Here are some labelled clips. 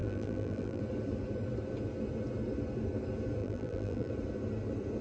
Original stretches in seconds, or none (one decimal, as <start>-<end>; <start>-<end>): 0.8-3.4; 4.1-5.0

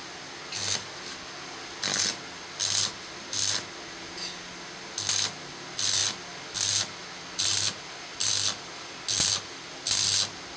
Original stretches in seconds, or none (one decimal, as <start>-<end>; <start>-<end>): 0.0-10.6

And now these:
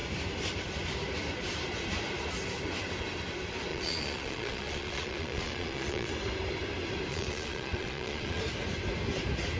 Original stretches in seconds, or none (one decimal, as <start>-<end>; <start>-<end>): 0.0-3.7; 6.1-7.1; 8.4-9.6

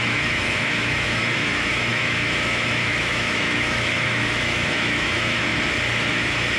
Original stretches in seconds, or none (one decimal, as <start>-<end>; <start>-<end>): 5.5-6.1